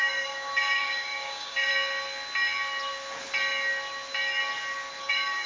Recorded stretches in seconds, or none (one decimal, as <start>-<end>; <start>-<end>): 1.7-5.0